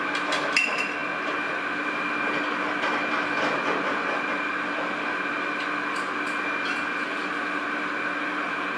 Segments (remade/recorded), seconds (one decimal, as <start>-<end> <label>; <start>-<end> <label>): 0.0-8.8 recorded